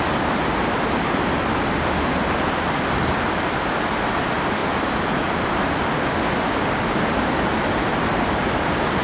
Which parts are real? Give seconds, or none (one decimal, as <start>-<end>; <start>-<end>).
0.0-9.0